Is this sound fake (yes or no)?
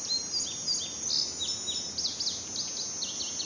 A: no